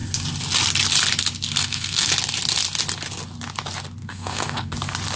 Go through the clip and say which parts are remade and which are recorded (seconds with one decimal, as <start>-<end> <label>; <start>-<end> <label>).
0.0-1.6 recorded; 1.6-2.1 remade; 2.1-4.0 recorded; 4.0-4.7 remade; 4.7-5.2 recorded